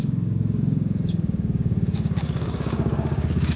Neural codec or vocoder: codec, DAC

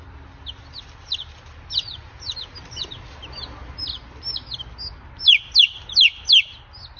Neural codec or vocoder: none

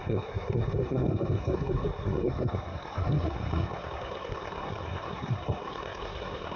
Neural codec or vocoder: codec, SNAC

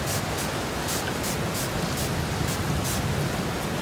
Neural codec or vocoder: none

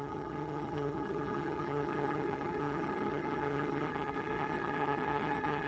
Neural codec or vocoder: vocoder, HiFi-GAN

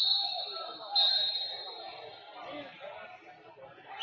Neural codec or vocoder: none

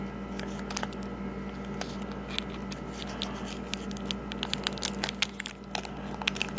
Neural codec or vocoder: none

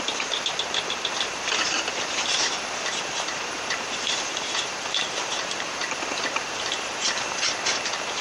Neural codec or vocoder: vocoder, BigVGAN v2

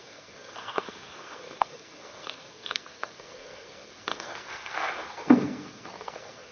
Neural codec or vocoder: codec, SNAC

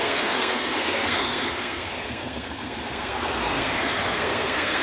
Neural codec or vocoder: codec, SNAC